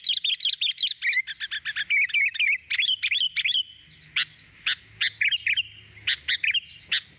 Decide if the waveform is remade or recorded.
recorded